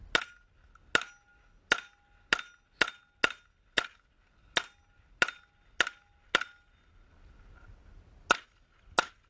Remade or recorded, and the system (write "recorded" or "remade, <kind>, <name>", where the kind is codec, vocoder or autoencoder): recorded